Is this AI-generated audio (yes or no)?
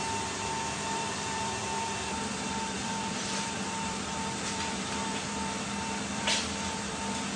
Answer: yes